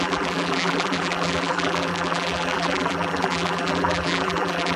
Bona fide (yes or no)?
no